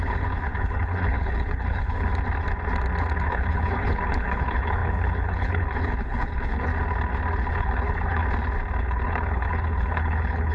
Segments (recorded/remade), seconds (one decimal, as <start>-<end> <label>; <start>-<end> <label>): 0.0-2.1 remade; 2.1-3.2 recorded; 3.2-6.7 remade; 6.7-7.5 recorded; 7.5-8.2 remade; 8.2-8.8 recorded; 8.8-10.5 remade